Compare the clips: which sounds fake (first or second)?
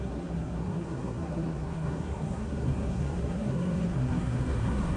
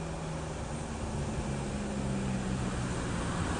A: first